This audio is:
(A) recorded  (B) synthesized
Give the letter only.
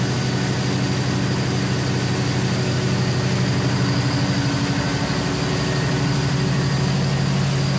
A